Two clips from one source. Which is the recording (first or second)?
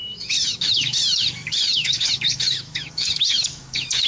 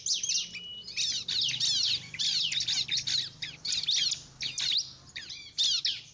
second